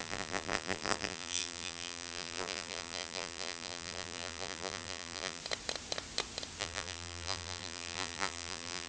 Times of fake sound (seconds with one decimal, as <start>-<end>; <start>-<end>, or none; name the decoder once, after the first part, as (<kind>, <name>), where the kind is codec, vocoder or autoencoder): 0.0-5.4 (vocoder, BigVGAN v2); 6.6-8.9